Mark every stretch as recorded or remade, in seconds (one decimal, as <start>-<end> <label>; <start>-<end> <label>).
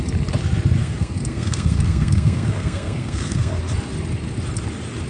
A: 0.0-0.8 recorded; 0.8-3.6 remade; 3.6-5.1 recorded